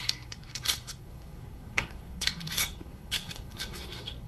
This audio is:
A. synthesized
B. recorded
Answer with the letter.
A